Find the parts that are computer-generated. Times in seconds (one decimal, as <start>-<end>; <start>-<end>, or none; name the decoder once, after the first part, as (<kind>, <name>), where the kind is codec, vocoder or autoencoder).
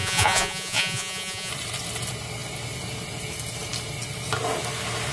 0.0-1.5 (vocoder, Vocos)